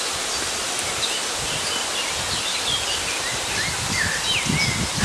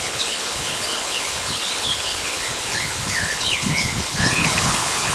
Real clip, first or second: first